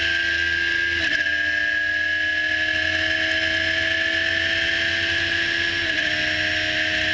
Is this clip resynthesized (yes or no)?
no